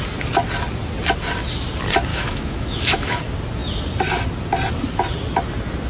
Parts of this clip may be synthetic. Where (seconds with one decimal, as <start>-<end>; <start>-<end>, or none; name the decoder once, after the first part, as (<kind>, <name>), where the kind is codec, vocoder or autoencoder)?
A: 2.1-3.2 (autoencoder, DAC-VAE)